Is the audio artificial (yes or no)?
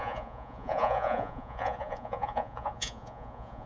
yes